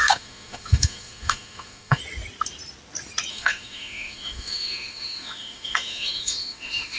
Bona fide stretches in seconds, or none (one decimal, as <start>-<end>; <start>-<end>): 2.0-3.3